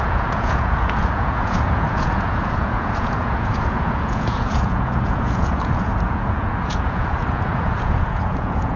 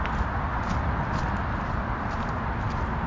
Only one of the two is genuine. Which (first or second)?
second